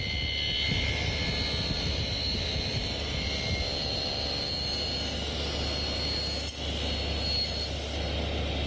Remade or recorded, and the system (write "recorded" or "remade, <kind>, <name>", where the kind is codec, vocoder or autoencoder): recorded